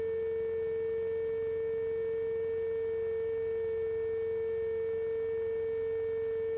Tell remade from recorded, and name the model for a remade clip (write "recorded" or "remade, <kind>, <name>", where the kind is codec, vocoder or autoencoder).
recorded